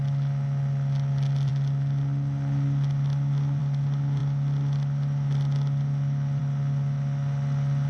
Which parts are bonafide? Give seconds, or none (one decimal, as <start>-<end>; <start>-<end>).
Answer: 0.0-7.9